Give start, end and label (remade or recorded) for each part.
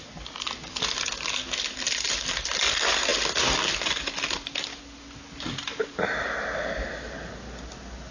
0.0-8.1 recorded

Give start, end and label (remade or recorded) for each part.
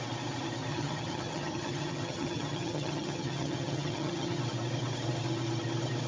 0.0-0.7 recorded; 0.7-4.4 remade; 4.4-6.1 recorded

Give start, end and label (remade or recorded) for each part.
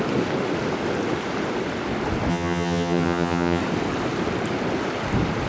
0.0-2.3 recorded; 2.3-3.6 remade; 3.6-5.5 recorded